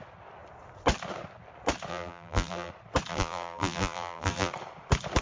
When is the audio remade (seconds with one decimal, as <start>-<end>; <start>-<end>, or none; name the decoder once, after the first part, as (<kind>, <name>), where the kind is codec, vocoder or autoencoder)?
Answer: 1.9-2.7 (vocoder, BigVGAN v2); 3.1-4.5